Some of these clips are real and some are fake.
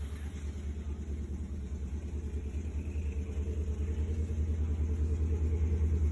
real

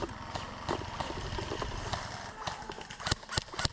real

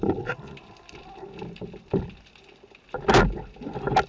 real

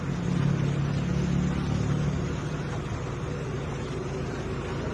real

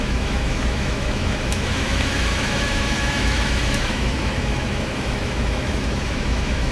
fake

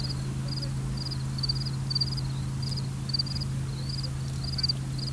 real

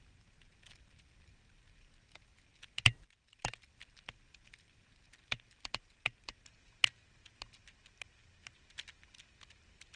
real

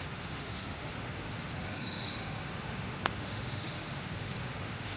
fake